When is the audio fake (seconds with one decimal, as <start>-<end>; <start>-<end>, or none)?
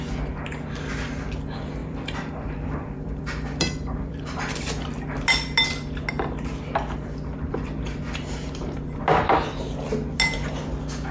1.8-4.2